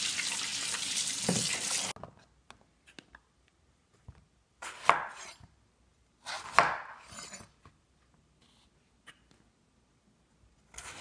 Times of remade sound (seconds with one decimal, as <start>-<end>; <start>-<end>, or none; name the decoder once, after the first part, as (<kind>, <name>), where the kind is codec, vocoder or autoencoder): none